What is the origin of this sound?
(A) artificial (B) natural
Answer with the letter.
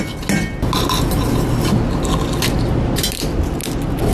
B